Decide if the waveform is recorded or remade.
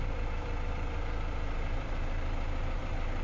remade